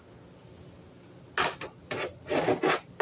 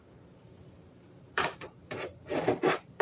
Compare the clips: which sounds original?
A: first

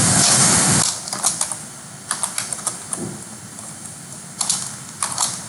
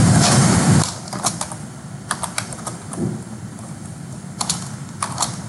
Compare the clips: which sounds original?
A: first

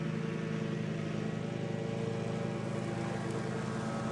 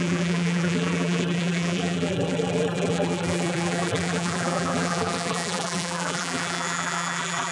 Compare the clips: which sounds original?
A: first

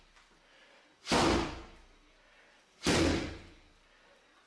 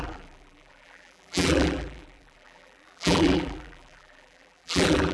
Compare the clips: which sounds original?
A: first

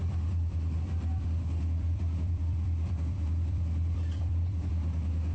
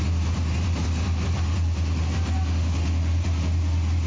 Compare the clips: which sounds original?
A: second